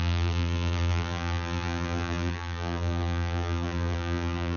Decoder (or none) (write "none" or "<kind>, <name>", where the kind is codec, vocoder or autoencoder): vocoder, BigVGAN v2